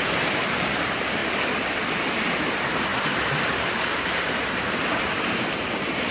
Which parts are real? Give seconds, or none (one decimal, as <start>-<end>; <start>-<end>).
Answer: 1.2-2.4